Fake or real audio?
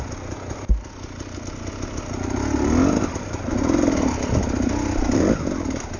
real